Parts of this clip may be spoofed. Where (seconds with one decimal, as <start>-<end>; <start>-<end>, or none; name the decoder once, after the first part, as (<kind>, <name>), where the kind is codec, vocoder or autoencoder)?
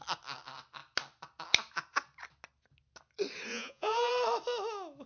3.5-4.1 (vocoder, Vocos)